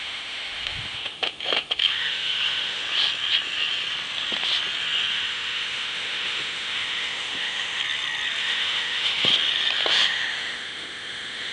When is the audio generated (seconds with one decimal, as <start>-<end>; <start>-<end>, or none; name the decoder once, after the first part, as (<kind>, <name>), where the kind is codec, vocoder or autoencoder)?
0.0-2.8 (autoencoder, DAC-VAE); 5.1-7.8; 8.4-9.3; 9.9-11.5